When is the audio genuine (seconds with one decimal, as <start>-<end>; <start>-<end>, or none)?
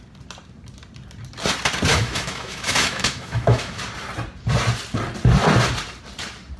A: 0.0-1.9; 3.8-6.6